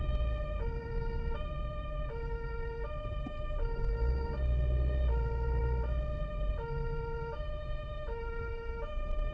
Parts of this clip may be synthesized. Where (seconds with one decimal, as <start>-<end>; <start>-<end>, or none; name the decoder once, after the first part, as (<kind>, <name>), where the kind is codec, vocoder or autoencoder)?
none